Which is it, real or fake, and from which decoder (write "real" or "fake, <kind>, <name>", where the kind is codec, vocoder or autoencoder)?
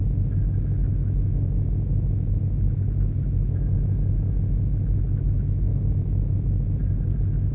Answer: real